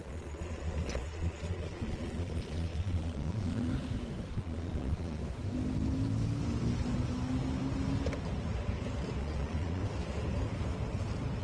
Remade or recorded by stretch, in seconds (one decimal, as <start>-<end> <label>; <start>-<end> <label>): 0.0-3.7 remade; 3.7-4.3 recorded; 4.3-5.2 remade; 5.2-9.2 recorded; 9.2-9.8 remade; 9.8-11.4 recorded